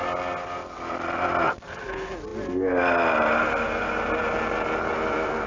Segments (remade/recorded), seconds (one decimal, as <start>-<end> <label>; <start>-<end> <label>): 0.0-5.5 recorded